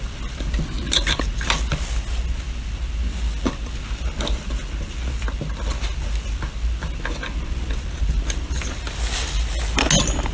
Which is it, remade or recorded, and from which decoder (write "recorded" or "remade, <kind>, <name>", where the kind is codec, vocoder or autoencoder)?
recorded